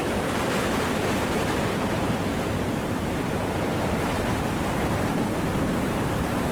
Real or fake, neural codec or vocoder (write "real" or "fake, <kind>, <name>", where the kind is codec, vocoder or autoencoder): fake, vocoder, BigVGAN v2